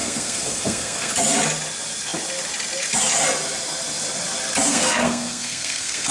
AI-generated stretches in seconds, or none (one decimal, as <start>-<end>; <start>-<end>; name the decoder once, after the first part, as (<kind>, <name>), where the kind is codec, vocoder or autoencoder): 0.0-1.1 (codec, SNAC); 4.7-6.1